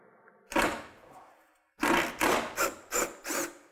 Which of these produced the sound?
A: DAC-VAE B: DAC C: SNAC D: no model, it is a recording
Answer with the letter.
D